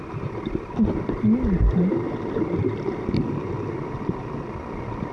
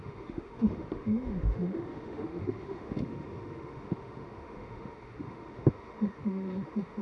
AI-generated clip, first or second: second